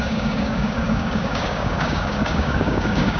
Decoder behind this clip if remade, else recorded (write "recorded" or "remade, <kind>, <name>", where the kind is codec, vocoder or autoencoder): remade, codec, DAC